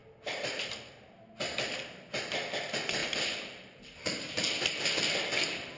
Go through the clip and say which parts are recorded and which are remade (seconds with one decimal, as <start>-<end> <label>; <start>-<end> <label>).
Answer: 0.0-3.0 recorded; 3.0-4.3 remade; 4.3-5.8 recorded